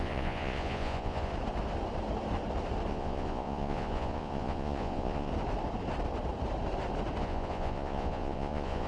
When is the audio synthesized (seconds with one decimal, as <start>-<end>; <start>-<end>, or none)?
0.0-1.3; 2.9-5.3; 7.2-8.9